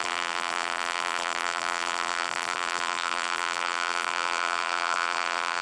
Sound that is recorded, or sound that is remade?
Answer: remade